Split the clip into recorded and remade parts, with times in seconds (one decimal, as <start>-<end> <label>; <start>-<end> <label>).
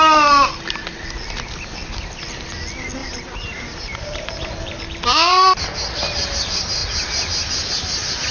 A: 0.0-3.0 recorded; 3.0-4.8 remade; 4.8-8.3 recorded